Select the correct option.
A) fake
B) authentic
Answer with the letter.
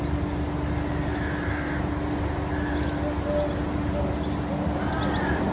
B